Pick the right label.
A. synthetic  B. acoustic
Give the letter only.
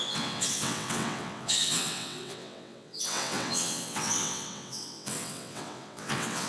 A